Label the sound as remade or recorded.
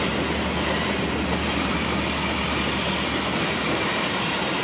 recorded